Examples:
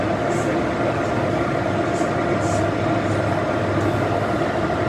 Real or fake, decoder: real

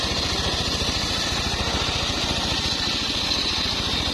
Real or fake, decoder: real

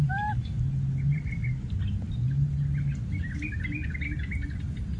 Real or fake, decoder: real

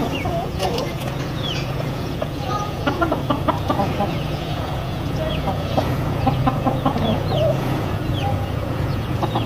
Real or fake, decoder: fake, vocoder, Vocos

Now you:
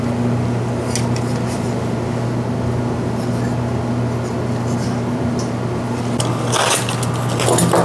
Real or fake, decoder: real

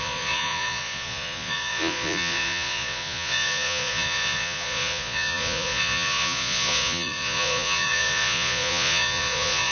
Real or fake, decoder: fake, vocoder, Vocos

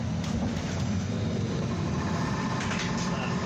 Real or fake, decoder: real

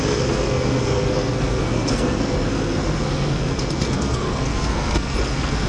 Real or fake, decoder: fake, codec, SNAC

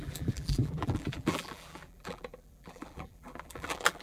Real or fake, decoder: fake, vocoder, BigVGAN v2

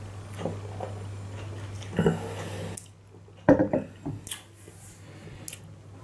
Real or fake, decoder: real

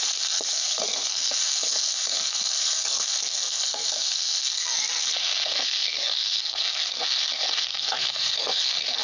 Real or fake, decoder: fake, codec, SNAC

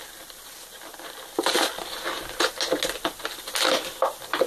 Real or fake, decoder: real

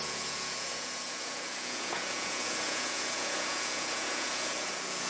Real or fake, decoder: fake, vocoder, Vocos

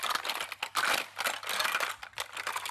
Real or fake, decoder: real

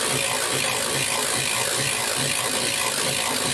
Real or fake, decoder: real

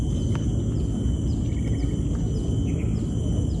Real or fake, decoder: real